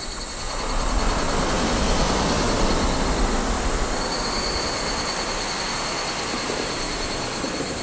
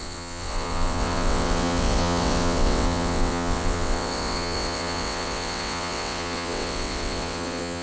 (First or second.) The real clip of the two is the first